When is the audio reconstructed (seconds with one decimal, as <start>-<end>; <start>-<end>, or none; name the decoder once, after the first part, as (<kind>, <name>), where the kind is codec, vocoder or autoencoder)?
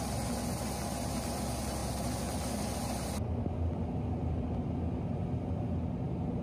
none